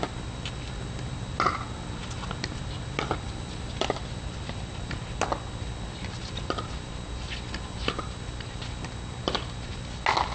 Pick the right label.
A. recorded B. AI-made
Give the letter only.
A